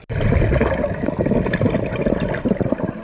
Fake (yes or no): no